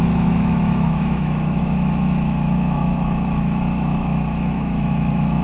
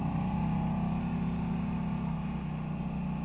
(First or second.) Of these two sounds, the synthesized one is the first